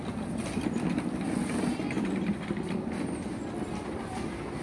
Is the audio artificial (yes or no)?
no